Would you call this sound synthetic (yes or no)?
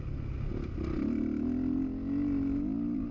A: no